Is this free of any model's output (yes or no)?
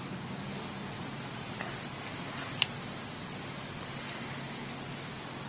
yes